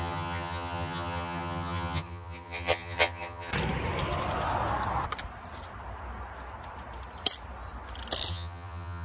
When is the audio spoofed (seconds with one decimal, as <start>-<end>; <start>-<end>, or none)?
0.0-3.5; 8.3-9.0